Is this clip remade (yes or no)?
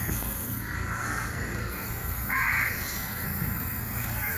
yes